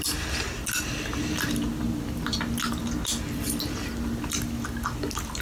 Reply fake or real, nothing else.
real